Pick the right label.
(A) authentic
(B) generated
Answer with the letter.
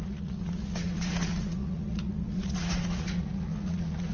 B